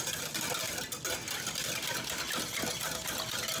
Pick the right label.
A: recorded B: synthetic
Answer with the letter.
A